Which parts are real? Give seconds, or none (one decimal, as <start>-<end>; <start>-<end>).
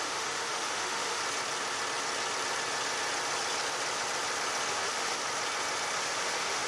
1.2-4.7; 5.2-6.0